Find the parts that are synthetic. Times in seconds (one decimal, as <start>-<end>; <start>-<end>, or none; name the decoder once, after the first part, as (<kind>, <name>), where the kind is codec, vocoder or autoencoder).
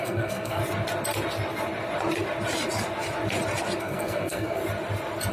0.0-0.6 (codec, SNAC); 3.8-4.6